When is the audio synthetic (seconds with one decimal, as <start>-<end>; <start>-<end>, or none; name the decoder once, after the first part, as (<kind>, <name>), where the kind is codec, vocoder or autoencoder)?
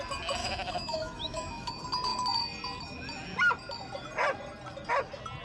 0.4-1.7 (autoencoder, DAC-VAE)